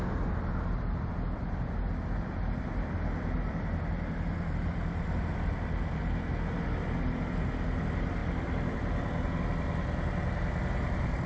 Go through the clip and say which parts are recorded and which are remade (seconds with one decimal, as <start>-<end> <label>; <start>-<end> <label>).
0.0-11.3 recorded